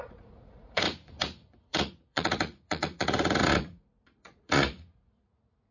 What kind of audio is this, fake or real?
fake